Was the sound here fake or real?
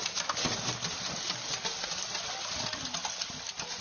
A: real